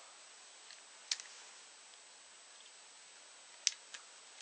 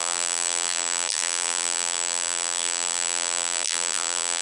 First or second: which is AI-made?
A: second